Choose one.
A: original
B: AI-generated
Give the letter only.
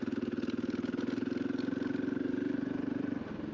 A